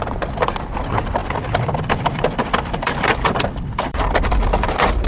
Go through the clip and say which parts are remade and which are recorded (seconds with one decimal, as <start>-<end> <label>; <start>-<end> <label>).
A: 0.0-1.2 recorded; 1.2-4.3 remade; 4.3-5.1 recorded